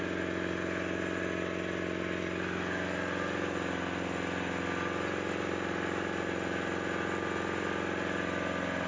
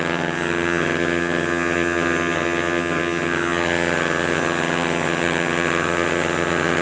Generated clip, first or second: second